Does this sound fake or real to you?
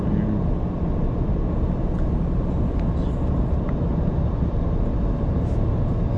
real